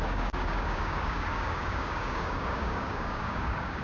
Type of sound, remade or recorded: remade